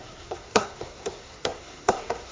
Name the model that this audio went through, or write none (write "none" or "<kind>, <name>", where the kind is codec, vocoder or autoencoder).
codec, SNAC